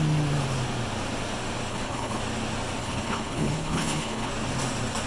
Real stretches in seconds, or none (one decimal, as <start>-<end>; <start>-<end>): 0.0-1.7; 2.2-2.8; 4.3-5.1